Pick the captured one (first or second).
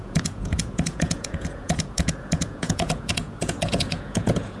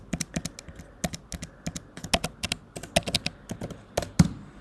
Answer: second